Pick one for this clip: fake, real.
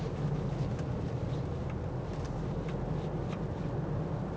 fake